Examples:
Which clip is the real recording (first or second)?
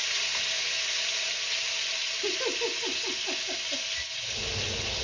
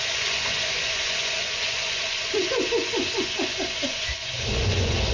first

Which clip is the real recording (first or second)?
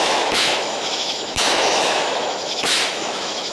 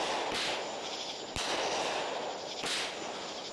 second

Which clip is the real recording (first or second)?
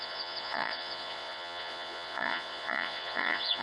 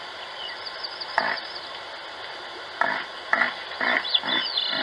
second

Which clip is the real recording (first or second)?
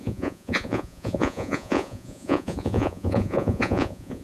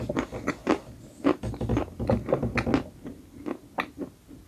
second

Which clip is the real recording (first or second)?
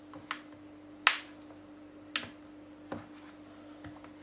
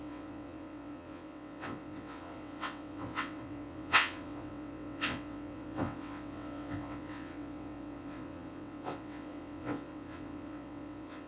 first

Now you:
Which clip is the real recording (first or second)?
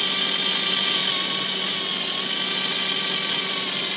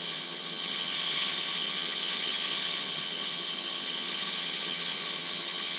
first